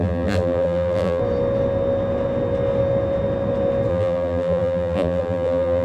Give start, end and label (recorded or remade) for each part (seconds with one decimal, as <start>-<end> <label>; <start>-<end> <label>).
0.0-1.2 remade; 1.2-3.9 recorded; 3.9-5.8 remade